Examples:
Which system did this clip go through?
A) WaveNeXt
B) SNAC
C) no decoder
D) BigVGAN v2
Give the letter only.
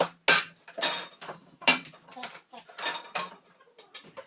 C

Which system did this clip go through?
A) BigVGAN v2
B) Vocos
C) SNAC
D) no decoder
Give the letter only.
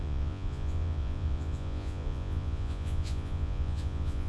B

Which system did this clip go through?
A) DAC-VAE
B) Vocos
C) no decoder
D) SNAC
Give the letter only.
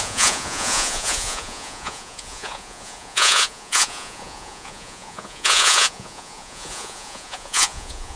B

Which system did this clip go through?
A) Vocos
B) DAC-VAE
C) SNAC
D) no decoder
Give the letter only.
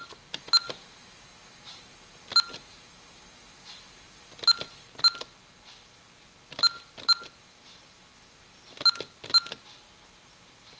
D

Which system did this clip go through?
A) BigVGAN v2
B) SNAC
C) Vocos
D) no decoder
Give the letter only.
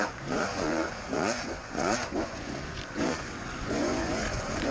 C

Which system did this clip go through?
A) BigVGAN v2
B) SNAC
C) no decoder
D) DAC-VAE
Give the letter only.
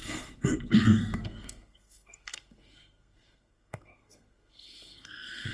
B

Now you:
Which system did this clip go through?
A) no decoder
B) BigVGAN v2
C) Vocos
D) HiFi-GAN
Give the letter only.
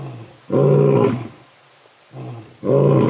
A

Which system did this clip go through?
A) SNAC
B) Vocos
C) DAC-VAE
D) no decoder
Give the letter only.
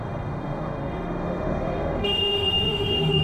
C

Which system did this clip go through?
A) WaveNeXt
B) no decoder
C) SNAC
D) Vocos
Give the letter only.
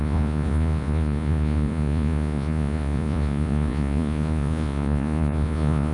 D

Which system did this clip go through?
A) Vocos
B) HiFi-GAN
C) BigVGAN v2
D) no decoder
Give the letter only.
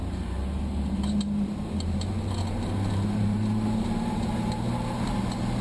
C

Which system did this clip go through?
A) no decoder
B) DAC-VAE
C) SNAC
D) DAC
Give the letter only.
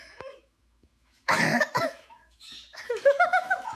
B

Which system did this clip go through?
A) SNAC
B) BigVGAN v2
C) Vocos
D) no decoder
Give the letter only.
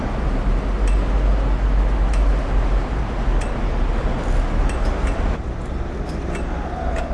D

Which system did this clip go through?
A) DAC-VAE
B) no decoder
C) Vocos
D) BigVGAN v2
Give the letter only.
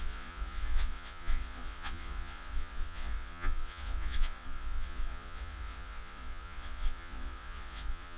C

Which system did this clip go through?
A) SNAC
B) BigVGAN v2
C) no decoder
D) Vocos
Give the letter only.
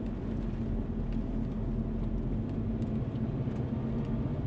C